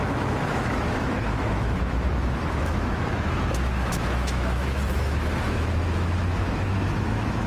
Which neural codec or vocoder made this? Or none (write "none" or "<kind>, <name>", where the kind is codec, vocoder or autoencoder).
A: autoencoder, DAC-VAE